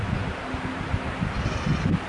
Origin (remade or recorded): recorded